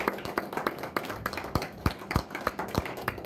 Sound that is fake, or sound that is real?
fake